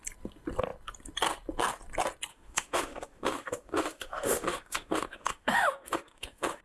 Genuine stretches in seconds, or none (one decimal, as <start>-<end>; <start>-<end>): 0.0-2.3